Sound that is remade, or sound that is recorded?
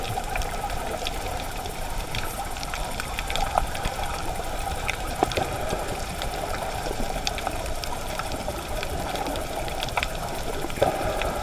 remade